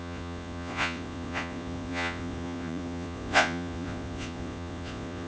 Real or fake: fake